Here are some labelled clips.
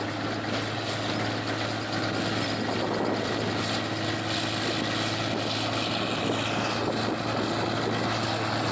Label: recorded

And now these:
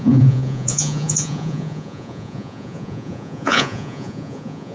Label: remade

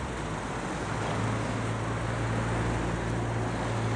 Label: recorded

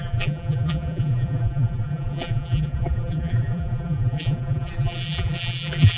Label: remade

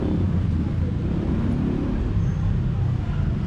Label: recorded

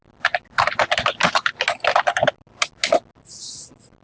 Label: recorded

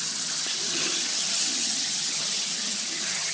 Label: remade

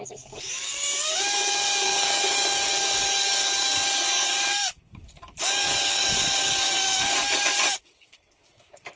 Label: remade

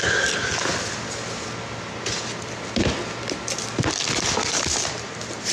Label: recorded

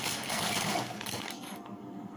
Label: remade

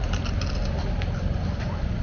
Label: recorded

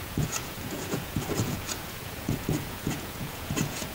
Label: remade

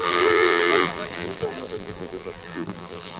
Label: remade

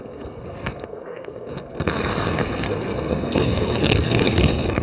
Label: remade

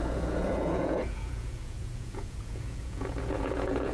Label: remade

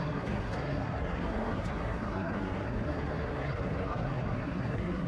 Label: remade